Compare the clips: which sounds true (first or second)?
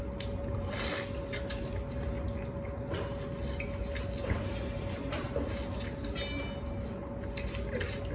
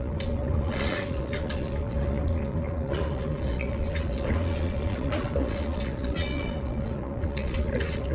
first